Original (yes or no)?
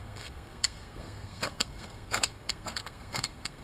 no